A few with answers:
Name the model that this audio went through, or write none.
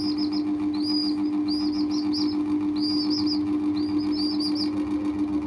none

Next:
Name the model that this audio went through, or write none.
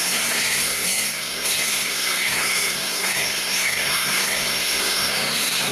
codec, SNAC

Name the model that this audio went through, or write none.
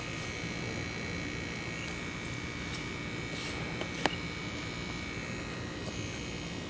none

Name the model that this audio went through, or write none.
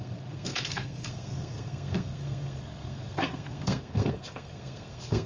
codec, SNAC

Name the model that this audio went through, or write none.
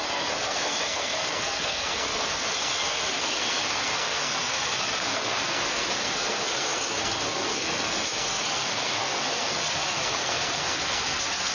codec, SNAC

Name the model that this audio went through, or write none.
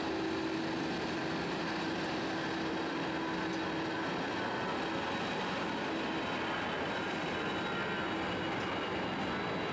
none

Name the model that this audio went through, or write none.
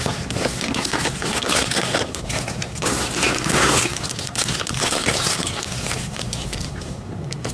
codec, SNAC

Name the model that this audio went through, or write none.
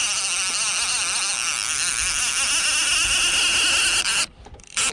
none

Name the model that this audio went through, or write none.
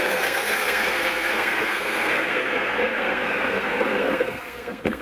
codec, SNAC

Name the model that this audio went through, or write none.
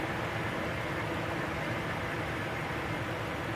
none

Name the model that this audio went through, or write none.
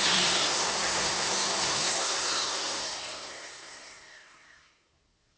codec, SNAC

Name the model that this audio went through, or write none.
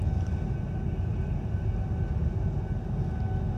none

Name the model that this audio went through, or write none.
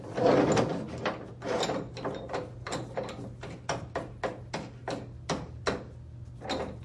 none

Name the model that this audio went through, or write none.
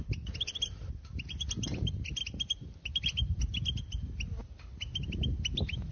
none